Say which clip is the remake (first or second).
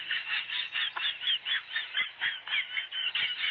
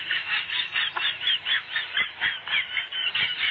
second